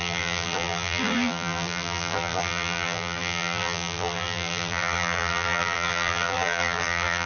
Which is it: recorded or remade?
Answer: remade